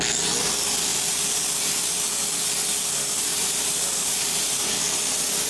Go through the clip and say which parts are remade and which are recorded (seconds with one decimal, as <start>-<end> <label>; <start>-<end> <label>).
0.0-3.3 recorded; 3.3-4.7 remade; 4.7-5.5 recorded